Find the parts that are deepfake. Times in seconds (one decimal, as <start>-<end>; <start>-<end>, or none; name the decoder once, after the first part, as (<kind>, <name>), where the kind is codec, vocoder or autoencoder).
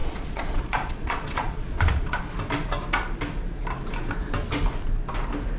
0.0-2.2 (vocoder, Vocos)